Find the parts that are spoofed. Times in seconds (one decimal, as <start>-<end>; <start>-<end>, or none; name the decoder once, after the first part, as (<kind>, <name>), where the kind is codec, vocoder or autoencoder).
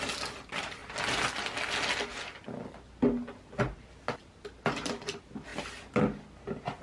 0.0-0.8 (vocoder, BigVGAN v2); 4.9-5.5